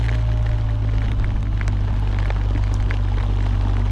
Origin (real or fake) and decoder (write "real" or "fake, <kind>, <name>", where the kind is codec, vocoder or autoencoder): real